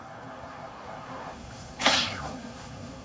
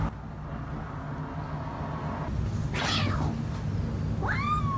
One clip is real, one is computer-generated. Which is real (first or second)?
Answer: second